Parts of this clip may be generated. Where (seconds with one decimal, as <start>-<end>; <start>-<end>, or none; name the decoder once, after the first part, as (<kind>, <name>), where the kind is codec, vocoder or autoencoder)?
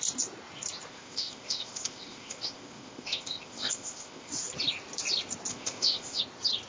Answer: 0.9-4.3 (codec, ZipCodec); 5.5-6.2